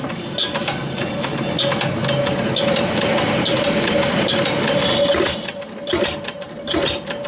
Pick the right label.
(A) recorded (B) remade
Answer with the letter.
A